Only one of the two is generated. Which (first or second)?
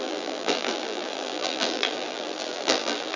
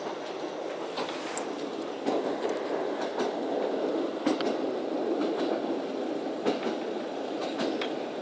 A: first